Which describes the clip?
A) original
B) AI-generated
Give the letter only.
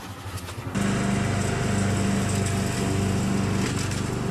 A